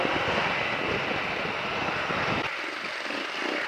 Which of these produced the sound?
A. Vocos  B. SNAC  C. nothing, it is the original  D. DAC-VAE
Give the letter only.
C